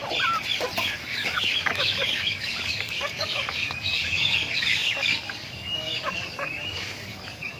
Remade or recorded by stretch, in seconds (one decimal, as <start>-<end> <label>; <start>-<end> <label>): 0.0-0.8 recorded; 0.8-7.6 remade